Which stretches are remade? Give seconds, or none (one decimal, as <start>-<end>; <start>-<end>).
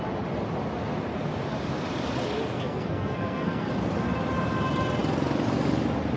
2.5-3.7